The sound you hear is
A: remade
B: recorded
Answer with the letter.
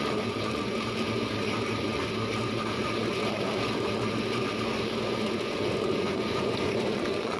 A